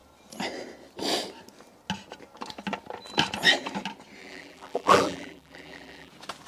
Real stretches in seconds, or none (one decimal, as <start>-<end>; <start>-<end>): 0.0-4.2; 6.1-6.5